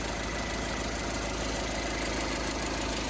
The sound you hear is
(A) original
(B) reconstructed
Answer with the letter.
A